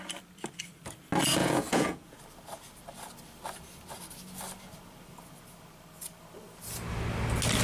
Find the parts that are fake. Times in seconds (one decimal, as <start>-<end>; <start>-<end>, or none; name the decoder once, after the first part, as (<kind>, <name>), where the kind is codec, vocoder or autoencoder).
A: 1.4-2.2 (vocoder, Vocos)